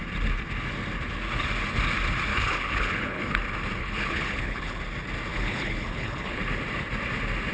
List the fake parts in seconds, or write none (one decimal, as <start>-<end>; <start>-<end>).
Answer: 2.3-3.2; 3.8-4.8; 5.3-6.4